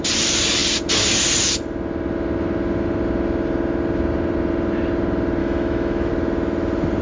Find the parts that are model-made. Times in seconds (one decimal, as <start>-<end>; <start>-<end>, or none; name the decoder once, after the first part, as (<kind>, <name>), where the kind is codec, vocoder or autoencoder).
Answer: 5.4-6.1 (autoencoder, DAC-VAE)